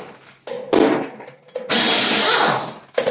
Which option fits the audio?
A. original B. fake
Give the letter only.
A